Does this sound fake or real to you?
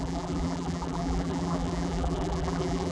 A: fake